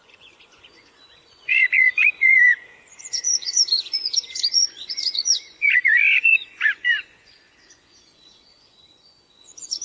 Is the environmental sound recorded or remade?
remade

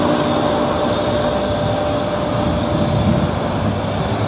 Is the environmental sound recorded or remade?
recorded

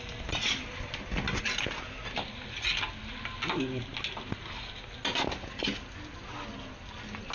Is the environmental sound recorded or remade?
recorded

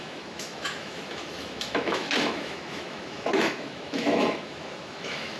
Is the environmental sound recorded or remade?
remade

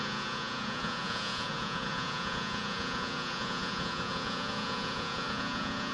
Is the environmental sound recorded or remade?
remade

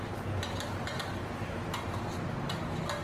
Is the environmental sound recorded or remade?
recorded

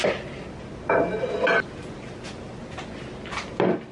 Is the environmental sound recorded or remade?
recorded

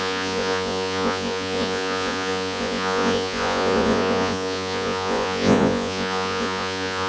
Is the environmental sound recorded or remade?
remade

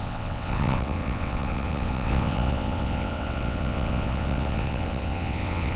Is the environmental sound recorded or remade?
remade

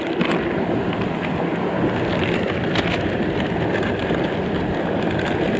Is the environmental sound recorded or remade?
recorded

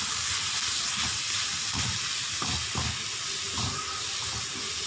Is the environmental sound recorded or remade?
recorded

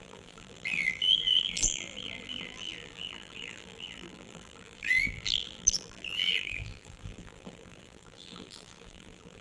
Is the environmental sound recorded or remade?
remade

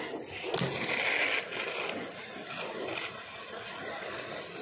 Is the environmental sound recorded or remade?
recorded